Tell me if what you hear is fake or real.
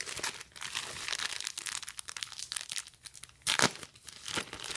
real